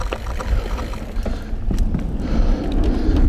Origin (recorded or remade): recorded